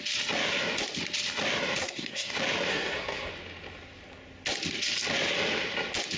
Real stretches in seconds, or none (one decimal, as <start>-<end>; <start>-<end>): 0.0-1.8; 2.3-2.7; 3.3-6.2